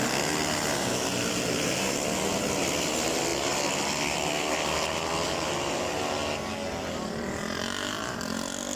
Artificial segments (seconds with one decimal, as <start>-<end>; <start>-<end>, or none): none